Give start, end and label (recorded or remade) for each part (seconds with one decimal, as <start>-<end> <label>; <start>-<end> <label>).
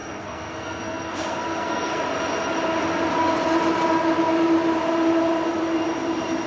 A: 0.0-2.0 remade; 2.0-6.5 recorded